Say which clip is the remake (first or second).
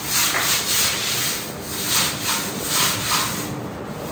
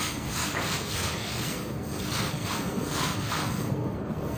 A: second